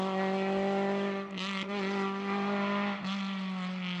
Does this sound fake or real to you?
real